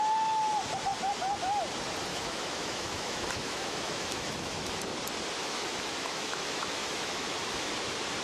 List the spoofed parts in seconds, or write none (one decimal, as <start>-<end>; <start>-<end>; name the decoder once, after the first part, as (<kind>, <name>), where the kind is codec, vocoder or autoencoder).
2.1-4.8 (autoencoder, DAC-VAE); 5.4-7.7